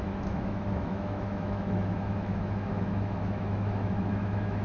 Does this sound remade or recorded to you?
remade